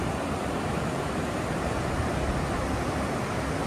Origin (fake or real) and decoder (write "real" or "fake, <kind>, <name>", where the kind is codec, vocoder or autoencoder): real